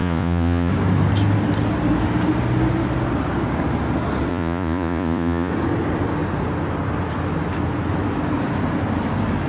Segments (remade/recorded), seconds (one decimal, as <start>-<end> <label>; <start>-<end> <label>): 0.0-0.7 remade; 0.7-4.3 recorded; 4.3-5.5 remade; 5.5-9.5 recorded

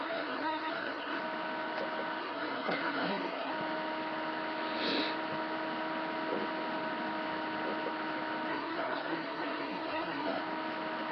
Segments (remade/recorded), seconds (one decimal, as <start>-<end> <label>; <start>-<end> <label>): 0.0-1.2 remade; 1.2-2.2 recorded; 2.2-3.5 remade; 3.5-8.5 recorded; 8.5-10.4 remade; 10.4-11.1 recorded

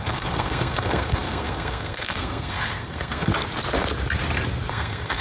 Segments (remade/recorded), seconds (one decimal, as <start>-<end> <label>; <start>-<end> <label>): 0.0-3.3 remade; 3.3-4.7 recorded; 4.7-5.2 remade